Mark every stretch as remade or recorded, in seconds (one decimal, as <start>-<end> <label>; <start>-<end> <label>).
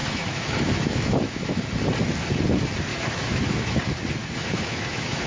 0.0-1.7 remade; 1.7-2.9 recorded; 2.9-3.8 remade; 3.8-4.2 recorded; 4.2-5.3 remade